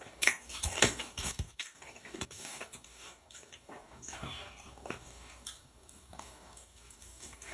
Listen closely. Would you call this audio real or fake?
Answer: fake